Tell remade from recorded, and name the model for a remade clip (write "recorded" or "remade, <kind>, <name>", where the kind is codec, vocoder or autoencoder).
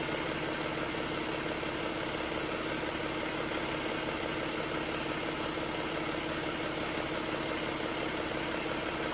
recorded